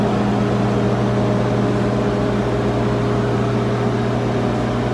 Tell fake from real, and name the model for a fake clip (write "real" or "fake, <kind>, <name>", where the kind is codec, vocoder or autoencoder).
real